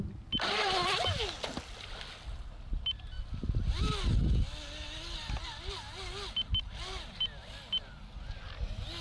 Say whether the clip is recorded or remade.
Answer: recorded